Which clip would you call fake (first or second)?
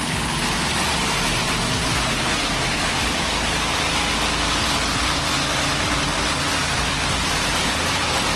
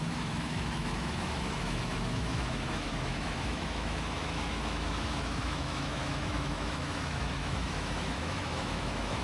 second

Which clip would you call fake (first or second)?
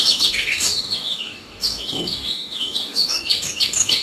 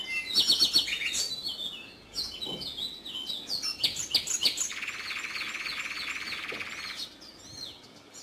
first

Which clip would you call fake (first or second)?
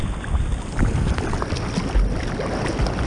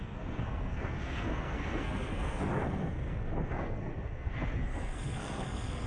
second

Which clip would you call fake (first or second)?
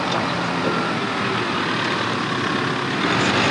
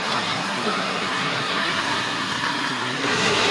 second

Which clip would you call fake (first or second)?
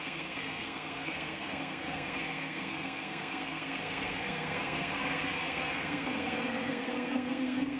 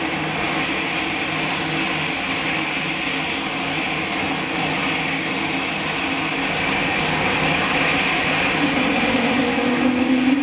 first